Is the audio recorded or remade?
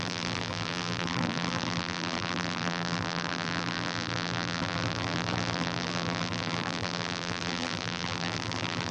remade